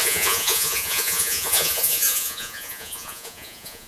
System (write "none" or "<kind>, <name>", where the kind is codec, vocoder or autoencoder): vocoder, Vocos